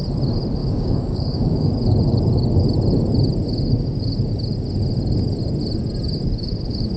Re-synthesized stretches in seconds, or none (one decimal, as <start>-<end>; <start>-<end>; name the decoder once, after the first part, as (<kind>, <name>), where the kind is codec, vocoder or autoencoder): 0.6-1.7 (codec, DAC)